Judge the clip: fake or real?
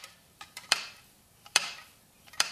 fake